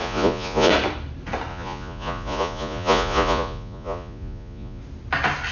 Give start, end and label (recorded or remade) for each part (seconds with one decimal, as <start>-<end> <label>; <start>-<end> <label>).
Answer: 0.0-0.7 remade; 0.7-1.5 recorded; 1.5-4.8 remade; 4.8-5.5 recorded